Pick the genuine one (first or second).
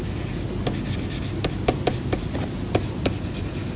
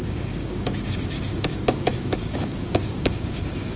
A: first